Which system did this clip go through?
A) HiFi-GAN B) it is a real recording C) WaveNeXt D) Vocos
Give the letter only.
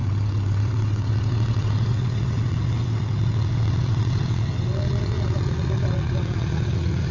C